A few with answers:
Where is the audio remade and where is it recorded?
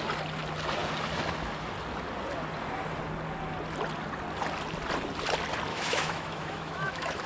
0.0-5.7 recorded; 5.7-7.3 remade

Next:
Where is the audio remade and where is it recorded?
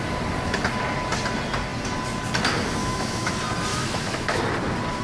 0.0-2.8 recorded; 2.8-3.3 remade; 3.3-3.7 recorded; 3.7-4.4 remade; 4.4-5.0 recorded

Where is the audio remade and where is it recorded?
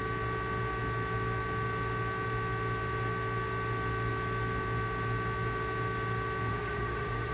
0.0-6.5 recorded; 6.5-7.3 remade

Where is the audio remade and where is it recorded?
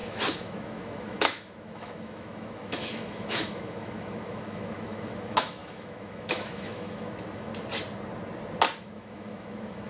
0.0-7.5 remade; 7.5-8.8 recorded; 8.8-9.9 remade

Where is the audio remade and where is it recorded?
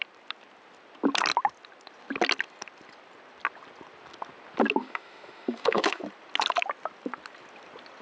0.0-4.8 recorded; 4.8-6.0 remade; 6.0-8.0 recorded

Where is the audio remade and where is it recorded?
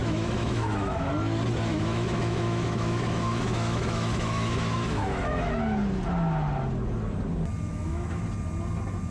0.0-1.1 remade; 1.1-1.7 recorded; 1.7-5.5 remade; 5.5-7.7 recorded; 7.7-8.2 remade; 8.2-9.1 recorded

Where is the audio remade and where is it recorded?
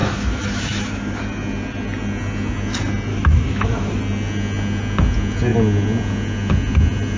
0.0-1.2 remade; 1.2-3.1 recorded; 3.1-4.0 remade; 4.0-7.2 recorded